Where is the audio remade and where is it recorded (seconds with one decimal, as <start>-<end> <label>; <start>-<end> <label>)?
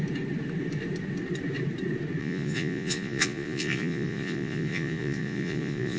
0.0-2.2 recorded; 2.2-6.0 remade